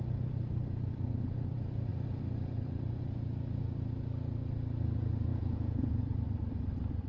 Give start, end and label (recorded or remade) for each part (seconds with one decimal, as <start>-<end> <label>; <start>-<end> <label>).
0.0-5.3 recorded; 5.3-6.0 remade; 6.0-7.1 recorded